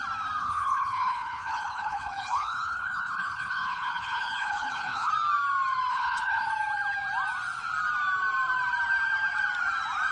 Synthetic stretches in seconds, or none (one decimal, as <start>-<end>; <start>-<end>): 0.4-5.1; 5.9-6.5